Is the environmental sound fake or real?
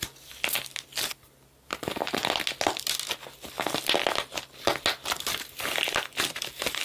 real